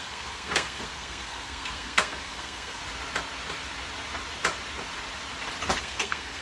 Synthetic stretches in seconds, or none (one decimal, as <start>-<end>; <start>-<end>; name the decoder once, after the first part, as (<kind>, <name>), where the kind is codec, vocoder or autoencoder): 0.0-2.8 (codec, SNAC); 5.8-6.4